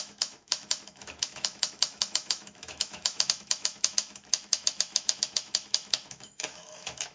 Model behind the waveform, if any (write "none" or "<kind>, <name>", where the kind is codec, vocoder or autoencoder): autoencoder, DAC-VAE